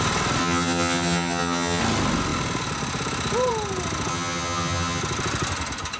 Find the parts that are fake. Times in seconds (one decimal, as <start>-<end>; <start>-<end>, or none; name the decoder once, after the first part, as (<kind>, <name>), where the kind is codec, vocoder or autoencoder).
0.4-1.8 (vocoder, HiFi-GAN); 4.1-5.0